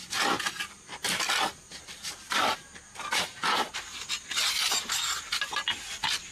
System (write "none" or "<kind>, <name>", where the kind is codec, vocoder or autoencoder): none